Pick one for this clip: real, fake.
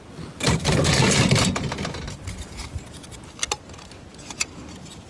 real